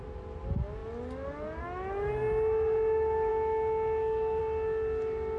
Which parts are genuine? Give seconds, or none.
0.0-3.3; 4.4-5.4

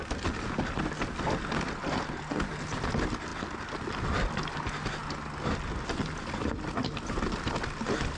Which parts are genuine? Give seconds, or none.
0.0-8.2

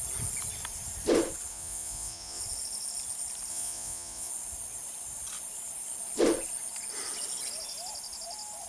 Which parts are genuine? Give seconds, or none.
0.0-1.5; 2.4-3.5; 4.3-8.7

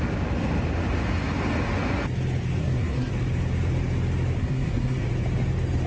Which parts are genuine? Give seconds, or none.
0.0-2.6; 3.1-4.4; 5.0-5.9

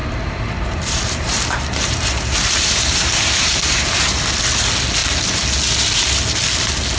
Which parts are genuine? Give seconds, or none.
4.2-7.0

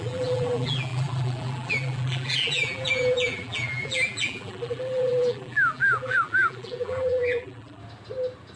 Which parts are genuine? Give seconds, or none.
7.8-8.6

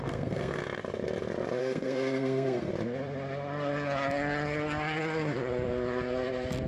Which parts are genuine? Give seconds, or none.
0.6-1.6; 2.7-6.7